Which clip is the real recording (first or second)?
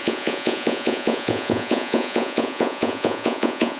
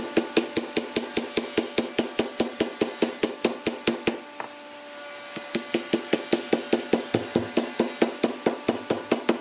second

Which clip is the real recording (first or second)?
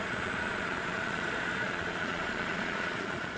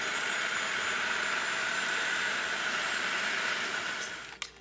second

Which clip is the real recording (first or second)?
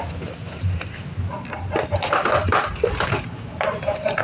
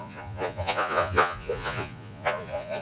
first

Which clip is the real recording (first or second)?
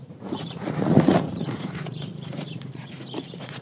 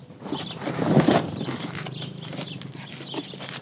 second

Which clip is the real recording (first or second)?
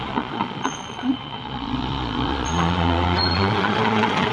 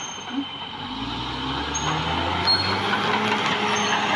second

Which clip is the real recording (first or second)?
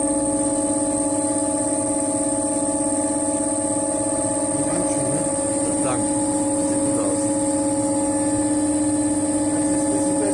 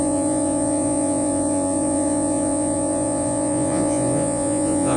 first